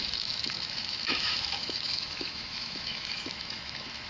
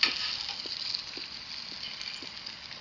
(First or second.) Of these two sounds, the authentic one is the second